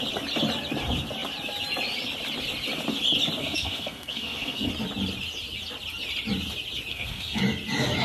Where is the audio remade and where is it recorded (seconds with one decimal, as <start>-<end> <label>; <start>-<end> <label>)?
0.0-3.4 recorded; 3.4-4.7 remade; 4.7-6.9 recorded; 6.9-7.4 remade; 7.4-8.0 recorded